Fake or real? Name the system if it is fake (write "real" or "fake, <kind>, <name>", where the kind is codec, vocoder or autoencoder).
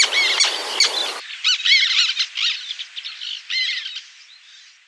real